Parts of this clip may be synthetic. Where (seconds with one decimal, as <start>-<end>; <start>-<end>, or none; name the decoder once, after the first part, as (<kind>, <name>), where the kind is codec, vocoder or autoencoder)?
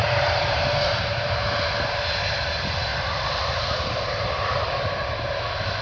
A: 0.0-1.1 (vocoder, BigVGAN v2); 2.9-4.6